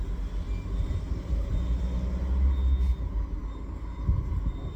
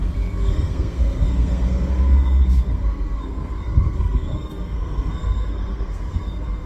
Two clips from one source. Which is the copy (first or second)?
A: second